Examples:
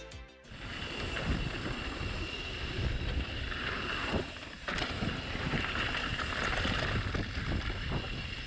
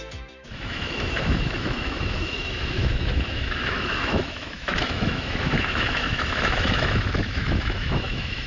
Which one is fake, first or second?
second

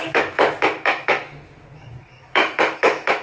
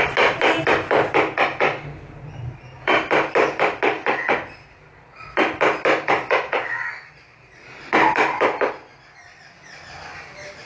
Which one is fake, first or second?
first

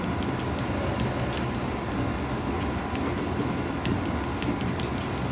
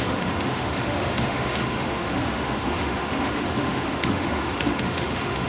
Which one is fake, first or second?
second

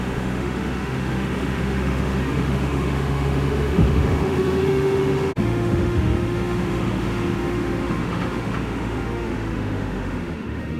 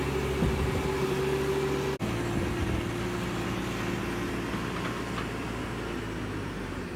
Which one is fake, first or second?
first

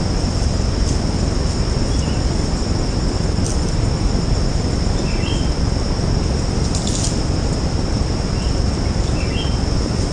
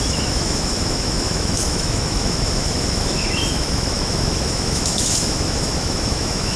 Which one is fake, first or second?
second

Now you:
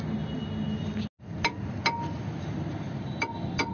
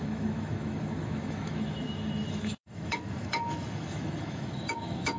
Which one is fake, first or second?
second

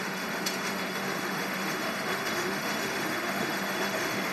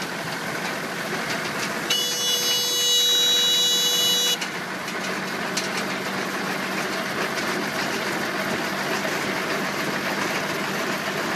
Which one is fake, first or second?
first